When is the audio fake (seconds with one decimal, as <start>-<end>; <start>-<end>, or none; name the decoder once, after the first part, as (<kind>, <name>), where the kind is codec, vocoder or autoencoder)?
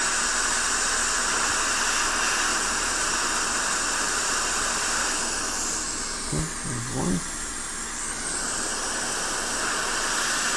1.0-1.6 (vocoder, BigVGAN v2); 2.5-5.2